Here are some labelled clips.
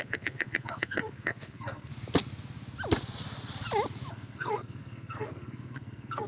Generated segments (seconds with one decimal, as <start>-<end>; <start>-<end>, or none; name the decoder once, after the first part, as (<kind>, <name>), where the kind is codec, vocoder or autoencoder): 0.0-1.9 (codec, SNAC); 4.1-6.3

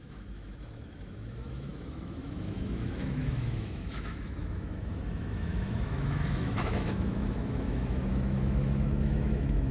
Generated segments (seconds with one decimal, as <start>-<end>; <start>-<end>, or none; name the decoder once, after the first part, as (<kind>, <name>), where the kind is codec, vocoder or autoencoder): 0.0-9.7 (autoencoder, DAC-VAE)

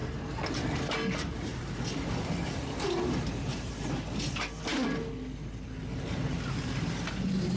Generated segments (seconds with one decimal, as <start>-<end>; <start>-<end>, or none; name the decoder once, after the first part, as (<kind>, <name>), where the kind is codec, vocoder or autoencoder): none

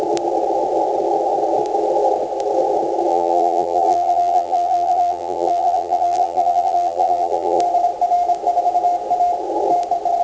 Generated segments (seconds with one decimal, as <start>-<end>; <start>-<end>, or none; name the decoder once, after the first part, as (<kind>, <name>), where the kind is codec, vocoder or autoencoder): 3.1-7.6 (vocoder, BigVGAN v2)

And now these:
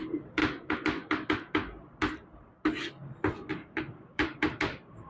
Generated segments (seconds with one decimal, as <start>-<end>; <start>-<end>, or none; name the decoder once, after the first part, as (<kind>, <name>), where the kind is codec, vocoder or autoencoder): 0.0-0.4 (vocoder, BigVGAN v2); 3.5-5.1

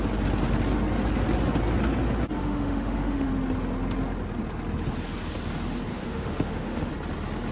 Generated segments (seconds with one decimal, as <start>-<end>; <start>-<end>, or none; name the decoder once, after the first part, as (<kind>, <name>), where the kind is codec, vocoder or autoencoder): 2.4-3.3 (autoencoder, DAC-VAE); 5.9-6.9

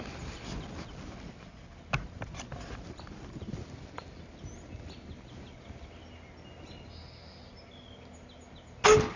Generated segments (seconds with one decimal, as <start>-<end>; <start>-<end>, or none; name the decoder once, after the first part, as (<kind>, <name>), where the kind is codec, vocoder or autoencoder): none